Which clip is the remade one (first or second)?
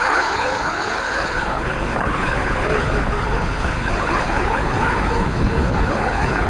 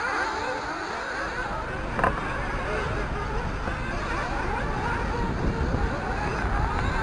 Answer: first